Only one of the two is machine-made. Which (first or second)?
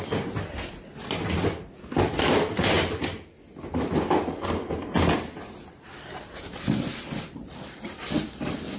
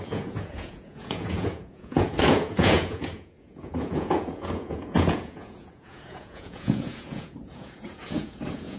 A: second